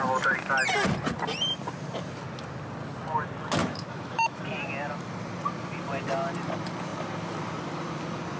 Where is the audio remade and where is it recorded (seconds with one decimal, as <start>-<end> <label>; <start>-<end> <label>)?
0.0-3.6 recorded; 3.6-4.4 remade; 4.4-8.4 recorded